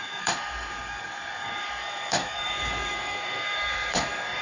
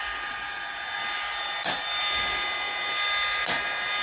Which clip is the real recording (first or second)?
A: second